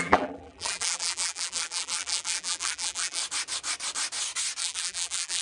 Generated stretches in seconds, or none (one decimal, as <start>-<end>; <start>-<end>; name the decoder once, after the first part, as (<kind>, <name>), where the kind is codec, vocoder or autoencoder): 0.0-3.2 (vocoder, BigVGAN v2); 4.6-5.4